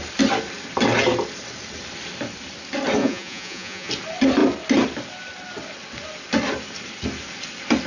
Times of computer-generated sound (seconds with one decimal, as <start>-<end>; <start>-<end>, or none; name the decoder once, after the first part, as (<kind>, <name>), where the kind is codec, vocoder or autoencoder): 3.0-3.9 (vocoder, Vocos)